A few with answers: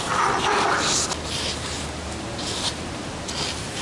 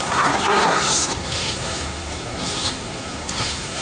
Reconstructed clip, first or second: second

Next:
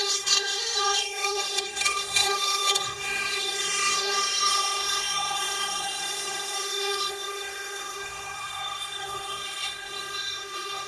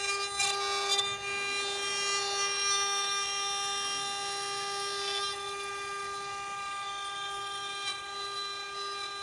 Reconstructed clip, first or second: first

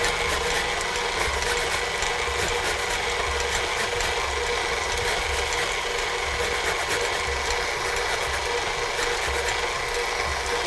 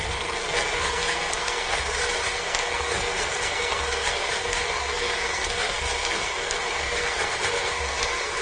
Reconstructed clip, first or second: second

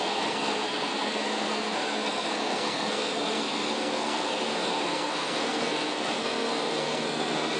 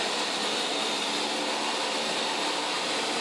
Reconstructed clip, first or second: first